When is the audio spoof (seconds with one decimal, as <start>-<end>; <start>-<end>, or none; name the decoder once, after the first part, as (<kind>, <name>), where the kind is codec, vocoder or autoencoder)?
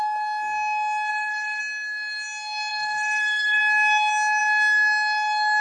1.1-1.6 (codec, SNAC); 2.7-3.6